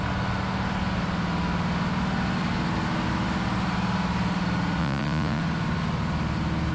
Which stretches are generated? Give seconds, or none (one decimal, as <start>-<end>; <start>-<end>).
4.8-5.4